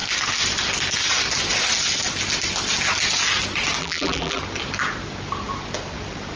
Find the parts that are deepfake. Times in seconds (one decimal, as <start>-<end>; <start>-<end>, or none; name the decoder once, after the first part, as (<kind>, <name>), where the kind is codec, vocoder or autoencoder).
3.8-4.4 (vocoder, BigVGAN v2)